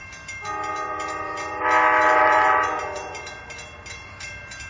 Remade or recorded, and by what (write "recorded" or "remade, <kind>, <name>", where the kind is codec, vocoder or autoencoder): recorded